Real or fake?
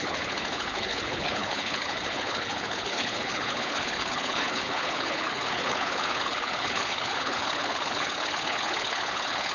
fake